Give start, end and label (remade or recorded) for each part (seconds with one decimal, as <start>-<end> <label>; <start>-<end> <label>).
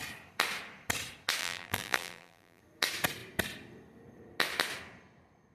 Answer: 0.0-1.4 recorded; 1.4-2.6 remade; 2.6-5.5 recorded